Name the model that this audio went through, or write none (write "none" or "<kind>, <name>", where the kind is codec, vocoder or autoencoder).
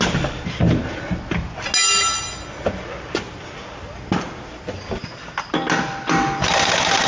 none